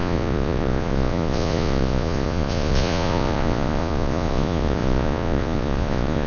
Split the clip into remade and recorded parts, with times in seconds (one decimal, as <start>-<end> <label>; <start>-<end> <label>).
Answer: 0.0-6.3 remade